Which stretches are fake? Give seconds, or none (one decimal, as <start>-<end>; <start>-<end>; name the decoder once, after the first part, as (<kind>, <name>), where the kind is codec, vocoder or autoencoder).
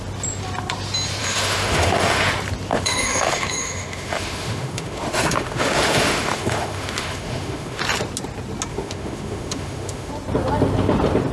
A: 1.2-2.3 (autoencoder, DAC-VAE); 2.7-7.8; 8.7-10.1